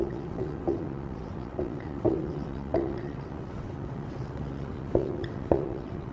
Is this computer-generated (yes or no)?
yes